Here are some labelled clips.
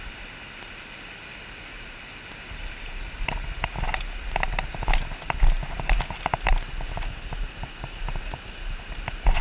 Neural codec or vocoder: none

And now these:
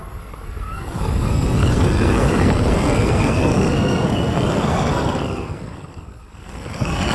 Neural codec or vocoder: codec, SNAC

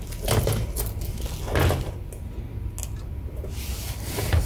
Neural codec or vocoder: none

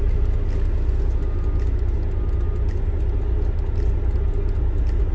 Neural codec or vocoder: none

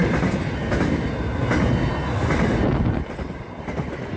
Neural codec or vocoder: none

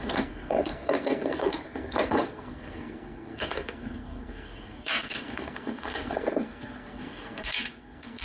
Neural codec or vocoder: codec, SNAC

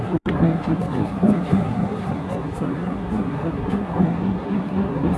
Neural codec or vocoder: codec, SNAC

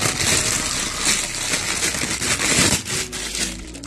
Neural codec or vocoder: none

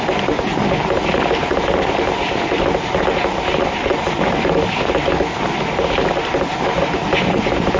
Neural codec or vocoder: none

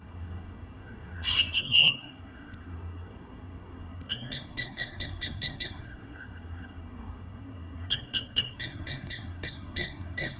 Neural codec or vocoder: codec, SNAC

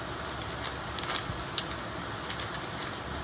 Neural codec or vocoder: none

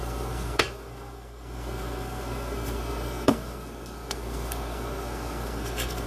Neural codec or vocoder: codec, SNAC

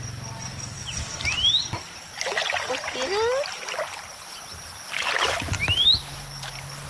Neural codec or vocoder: none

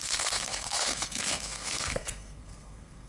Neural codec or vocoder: codec, SNAC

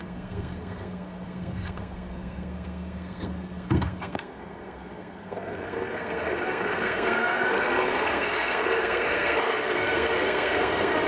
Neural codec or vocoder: codec, SNAC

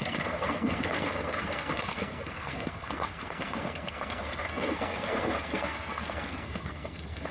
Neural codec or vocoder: codec, SNAC